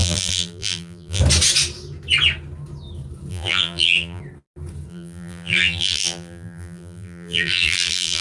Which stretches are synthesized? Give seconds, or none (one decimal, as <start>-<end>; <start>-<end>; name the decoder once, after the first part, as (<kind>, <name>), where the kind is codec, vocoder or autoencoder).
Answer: 0.0-1.2 (vocoder, BigVGAN v2); 3.3-4.2; 4.9-8.2